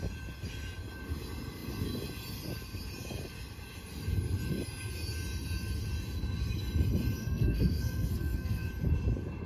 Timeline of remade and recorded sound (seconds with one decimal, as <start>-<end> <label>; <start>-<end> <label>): 0.0-7.2 recorded; 7.2-8.7 remade; 8.7-9.5 recorded